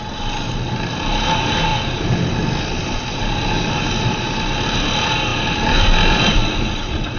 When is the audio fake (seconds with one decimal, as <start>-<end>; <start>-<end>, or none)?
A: none